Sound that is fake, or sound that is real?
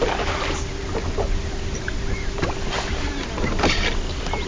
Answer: real